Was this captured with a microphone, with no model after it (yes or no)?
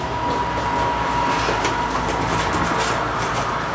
yes